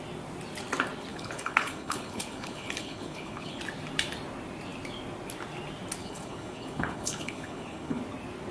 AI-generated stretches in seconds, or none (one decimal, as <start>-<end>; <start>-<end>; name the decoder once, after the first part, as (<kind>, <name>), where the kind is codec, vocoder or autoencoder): 1.1-3.6 (codec, HILCodec); 6.0-8.0